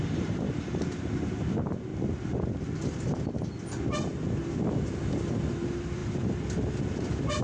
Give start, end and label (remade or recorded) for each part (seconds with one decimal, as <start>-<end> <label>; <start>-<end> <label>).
0.0-7.4 recorded